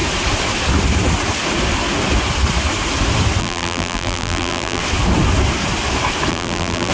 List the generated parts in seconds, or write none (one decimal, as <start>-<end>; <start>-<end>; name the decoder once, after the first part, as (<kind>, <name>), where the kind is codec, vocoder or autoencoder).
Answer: 3.4-4.8 (vocoder, BigVGAN v2); 6.3-6.9